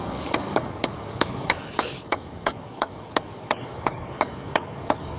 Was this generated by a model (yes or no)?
yes